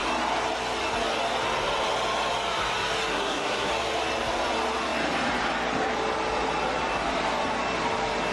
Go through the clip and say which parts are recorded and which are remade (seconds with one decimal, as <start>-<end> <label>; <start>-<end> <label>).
0.0-3.1 recorded; 3.1-3.7 remade; 3.7-8.3 recorded